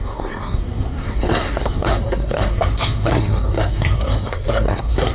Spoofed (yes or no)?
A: yes